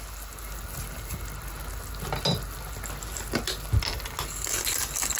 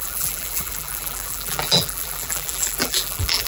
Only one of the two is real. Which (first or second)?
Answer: first